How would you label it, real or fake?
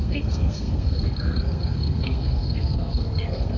fake